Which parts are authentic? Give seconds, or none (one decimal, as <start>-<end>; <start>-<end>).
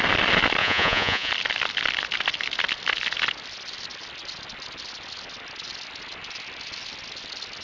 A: 0.0-0.6; 1.3-7.6